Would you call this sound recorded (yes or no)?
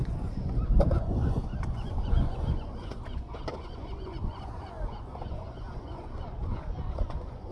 no